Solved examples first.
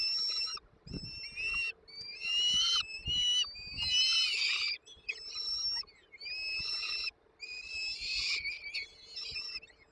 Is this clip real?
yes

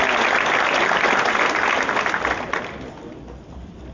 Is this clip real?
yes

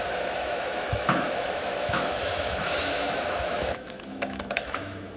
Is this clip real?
no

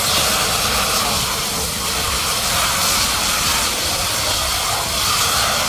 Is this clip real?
yes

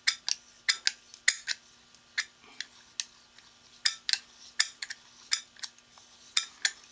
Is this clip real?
yes